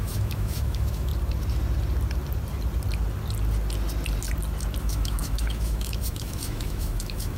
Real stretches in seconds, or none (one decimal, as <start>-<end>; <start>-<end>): 1.1-4.8